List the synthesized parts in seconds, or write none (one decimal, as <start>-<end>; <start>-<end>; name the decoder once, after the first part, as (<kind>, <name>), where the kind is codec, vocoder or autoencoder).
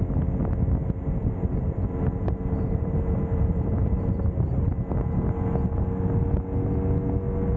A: 1.2-4.2 (vocoder, BigVGAN v2)